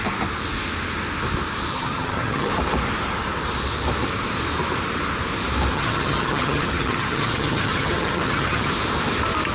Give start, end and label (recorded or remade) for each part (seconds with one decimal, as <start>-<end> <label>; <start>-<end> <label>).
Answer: 0.0-1.7 recorded; 1.7-2.5 remade; 2.5-5.7 recorded; 5.7-8.7 remade; 8.7-9.5 recorded

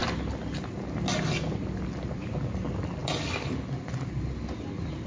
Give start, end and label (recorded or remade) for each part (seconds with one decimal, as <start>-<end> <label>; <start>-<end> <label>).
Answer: 0.0-5.1 recorded

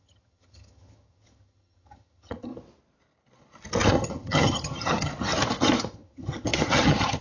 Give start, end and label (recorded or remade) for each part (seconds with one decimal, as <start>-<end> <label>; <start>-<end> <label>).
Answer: 0.0-2.5 remade; 2.5-3.9 recorded; 3.9-5.1 remade; 5.1-5.8 recorded; 5.8-7.2 remade

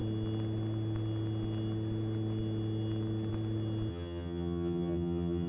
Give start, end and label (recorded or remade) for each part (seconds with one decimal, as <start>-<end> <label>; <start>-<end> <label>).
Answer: 0.0-3.9 recorded; 3.9-5.5 remade

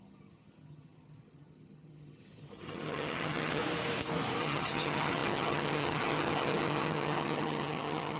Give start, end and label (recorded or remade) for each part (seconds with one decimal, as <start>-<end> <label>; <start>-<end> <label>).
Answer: 0.0-3.6 remade; 3.6-4.4 recorded; 4.4-8.2 remade

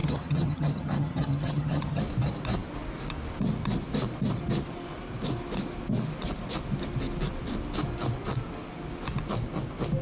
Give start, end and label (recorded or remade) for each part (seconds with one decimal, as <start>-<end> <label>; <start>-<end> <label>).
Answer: 0.0-2.0 remade; 2.0-10.0 recorded

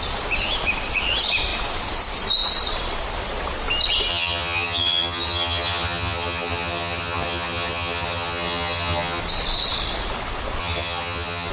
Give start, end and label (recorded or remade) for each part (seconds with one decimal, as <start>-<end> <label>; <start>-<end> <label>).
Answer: 0.0-4.1 recorded; 4.1-9.2 remade; 9.2-10.6 recorded; 10.6-11.5 remade

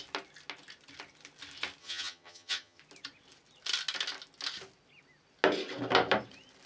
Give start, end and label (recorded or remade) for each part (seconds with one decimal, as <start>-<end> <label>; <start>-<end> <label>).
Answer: 0.0-1.8 recorded; 1.8-2.8 remade; 2.8-6.7 recorded